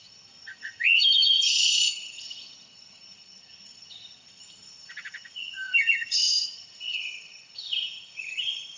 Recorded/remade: remade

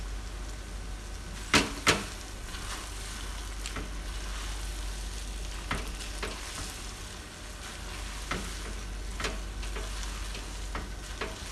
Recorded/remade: recorded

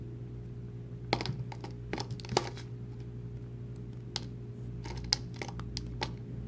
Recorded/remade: recorded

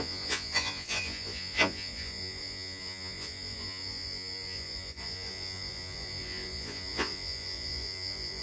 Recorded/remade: remade